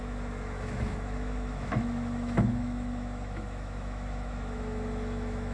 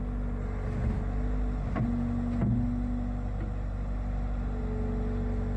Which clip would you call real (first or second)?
second